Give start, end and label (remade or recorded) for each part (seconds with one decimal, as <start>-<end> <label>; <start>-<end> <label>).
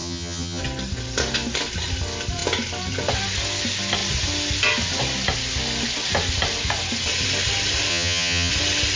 0.0-0.6 remade; 0.6-7.9 recorded; 7.9-8.5 remade; 8.5-9.0 recorded